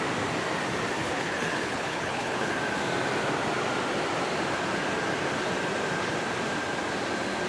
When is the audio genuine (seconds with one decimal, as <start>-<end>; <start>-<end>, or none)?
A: 0.0-1.0; 2.5-7.5